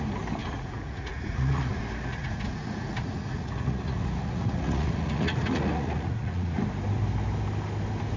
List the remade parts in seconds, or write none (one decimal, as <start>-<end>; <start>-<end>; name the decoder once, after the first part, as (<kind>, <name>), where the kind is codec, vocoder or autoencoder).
0.4-1.8 (vocoder, Vocos); 2.2-6.6